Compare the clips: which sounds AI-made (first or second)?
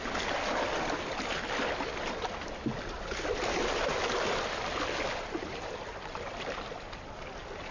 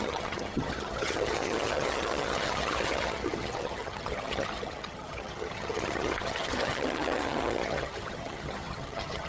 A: second